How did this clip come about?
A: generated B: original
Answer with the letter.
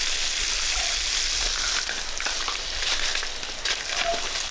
B